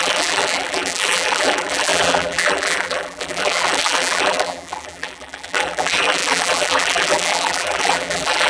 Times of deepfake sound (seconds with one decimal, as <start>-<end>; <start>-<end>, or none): 0.0-8.5